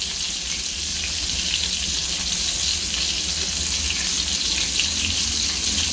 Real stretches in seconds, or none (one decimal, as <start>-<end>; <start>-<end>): 0.0-5.9